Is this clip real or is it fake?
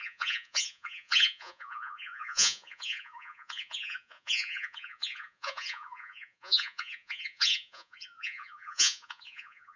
fake